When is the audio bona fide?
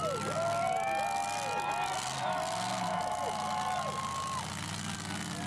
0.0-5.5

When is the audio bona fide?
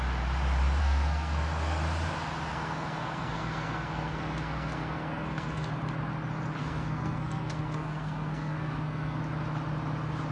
0.0-0.8; 1.8-2.5; 5.7-6.6; 9.2-10.3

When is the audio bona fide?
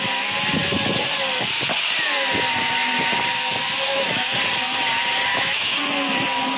0.0-3.9; 4.4-5.3; 5.8-6.6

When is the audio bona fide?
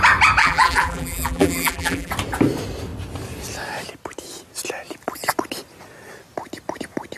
0.0-0.4; 2.1-7.2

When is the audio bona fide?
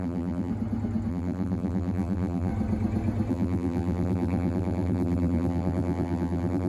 0.5-1.1; 2.5-3.3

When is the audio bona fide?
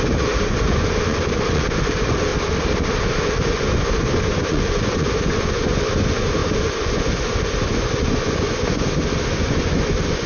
2.3-3.2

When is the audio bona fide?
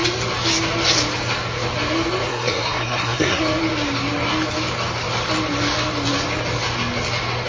0.0-2.3; 3.4-7.5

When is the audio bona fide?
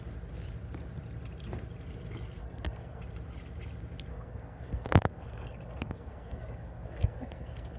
0.0-2.4; 3.0-4.1